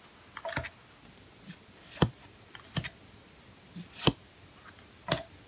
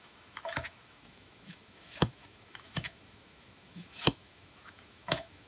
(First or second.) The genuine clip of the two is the first